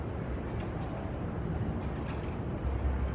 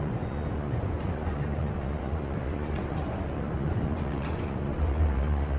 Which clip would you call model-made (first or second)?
second